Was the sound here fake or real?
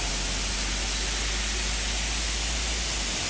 real